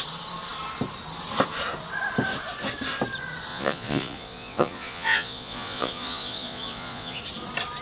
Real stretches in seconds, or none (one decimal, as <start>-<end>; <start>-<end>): 0.0-3.5; 7.2-7.8